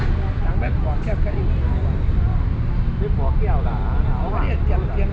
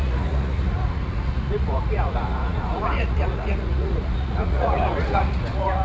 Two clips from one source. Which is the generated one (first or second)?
second